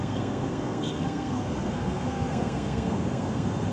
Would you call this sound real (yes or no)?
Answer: no